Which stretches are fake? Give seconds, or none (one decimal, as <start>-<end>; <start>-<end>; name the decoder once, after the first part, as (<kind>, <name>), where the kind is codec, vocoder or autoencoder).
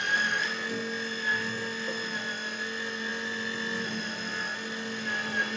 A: none